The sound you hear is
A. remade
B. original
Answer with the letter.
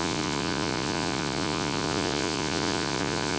A